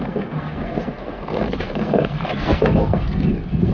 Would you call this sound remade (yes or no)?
yes